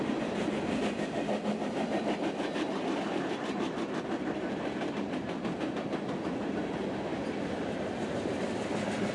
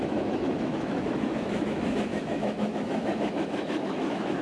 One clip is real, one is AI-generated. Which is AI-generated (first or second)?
second